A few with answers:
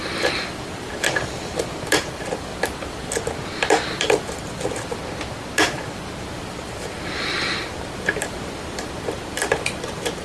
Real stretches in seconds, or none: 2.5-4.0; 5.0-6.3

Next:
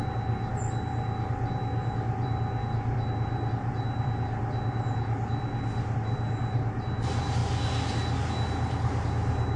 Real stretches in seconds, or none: 0.0-9.6

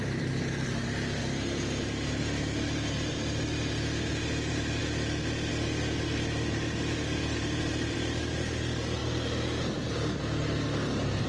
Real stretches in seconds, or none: 4.8-5.5; 9.0-9.6